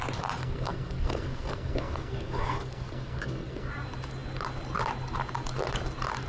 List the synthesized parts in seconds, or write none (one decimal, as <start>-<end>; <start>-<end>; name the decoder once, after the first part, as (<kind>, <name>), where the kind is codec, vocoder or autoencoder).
0.4-3.7 (codec, SNAC)